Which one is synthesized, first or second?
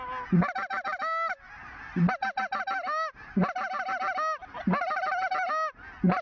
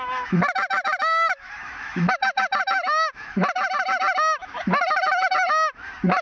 second